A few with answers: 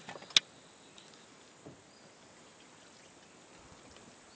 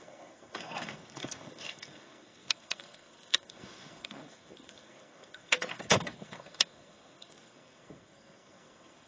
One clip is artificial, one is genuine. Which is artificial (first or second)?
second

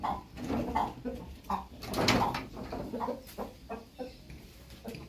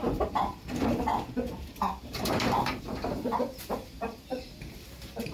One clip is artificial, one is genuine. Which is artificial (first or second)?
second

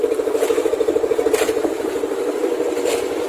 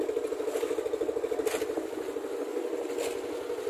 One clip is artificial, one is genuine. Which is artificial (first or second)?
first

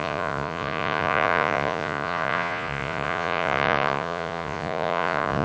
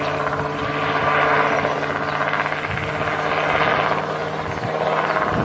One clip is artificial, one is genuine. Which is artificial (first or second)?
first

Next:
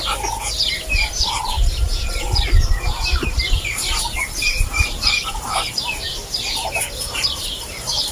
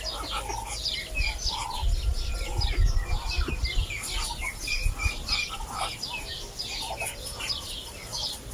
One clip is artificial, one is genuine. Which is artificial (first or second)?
first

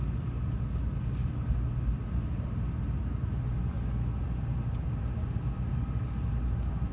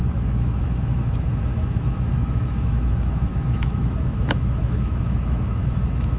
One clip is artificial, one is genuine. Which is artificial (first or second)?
second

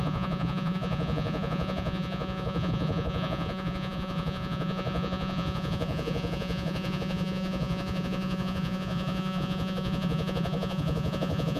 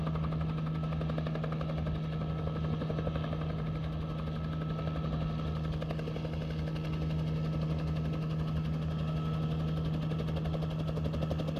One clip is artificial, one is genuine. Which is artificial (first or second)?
first